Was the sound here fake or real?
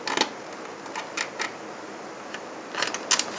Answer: real